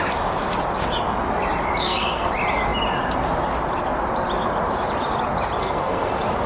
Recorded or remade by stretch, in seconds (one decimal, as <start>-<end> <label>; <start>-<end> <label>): 0.0-1.8 recorded; 1.8-2.3 remade; 2.3-5.6 recorded; 5.6-6.1 remade; 6.1-6.5 recorded